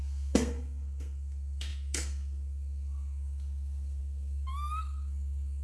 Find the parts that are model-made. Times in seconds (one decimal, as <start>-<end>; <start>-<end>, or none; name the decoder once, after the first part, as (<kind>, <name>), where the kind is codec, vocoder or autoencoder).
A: 0.0-5.6 (codec, SNAC)